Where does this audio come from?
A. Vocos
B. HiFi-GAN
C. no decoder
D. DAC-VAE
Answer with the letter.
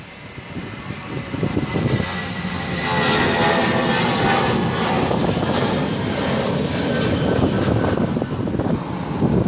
C